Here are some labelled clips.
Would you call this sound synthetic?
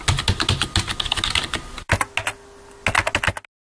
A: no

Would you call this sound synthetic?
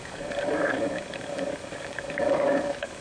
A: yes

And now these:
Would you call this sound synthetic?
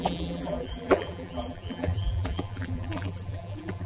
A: yes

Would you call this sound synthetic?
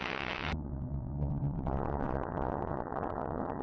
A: yes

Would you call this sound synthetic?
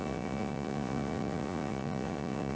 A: yes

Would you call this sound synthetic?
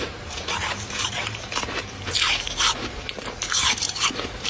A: yes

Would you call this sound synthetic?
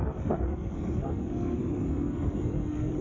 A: yes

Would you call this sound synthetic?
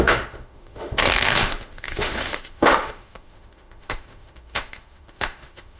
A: yes